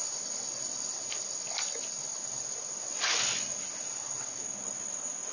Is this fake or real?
real